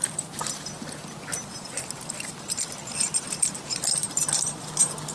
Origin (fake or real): real